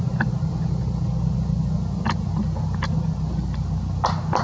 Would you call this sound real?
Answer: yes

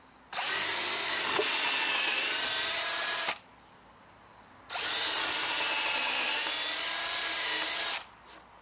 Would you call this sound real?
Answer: yes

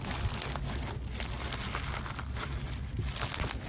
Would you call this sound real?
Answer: yes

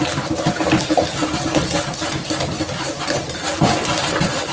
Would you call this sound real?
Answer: yes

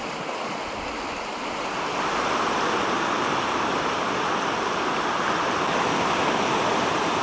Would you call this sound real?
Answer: yes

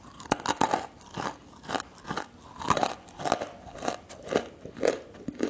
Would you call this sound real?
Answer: yes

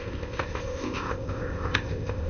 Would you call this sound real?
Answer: no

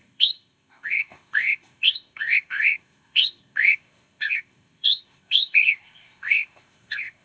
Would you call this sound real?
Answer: no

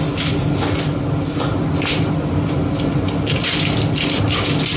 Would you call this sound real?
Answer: yes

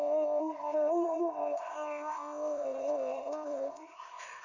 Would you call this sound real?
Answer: no